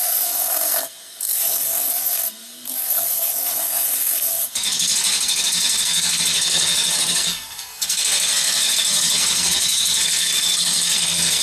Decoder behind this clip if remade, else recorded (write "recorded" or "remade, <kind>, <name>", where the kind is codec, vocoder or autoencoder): remade, codec, SNAC